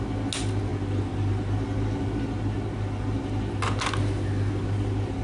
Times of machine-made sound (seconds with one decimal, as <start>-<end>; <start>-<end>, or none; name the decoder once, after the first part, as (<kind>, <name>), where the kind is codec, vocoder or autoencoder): none